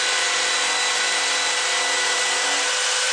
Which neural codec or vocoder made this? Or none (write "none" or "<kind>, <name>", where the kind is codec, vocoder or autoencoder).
none